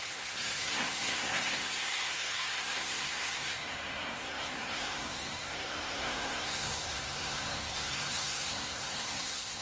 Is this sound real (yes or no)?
no